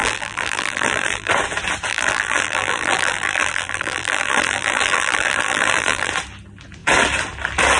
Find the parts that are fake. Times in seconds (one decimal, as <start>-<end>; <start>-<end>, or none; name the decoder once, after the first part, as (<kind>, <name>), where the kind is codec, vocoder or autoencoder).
0.0-1.3 (vocoder, BigVGAN v2); 1.9-6.1